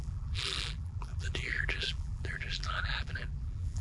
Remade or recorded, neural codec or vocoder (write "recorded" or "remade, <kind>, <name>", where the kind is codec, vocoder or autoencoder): remade, vocoder, BigVGAN v2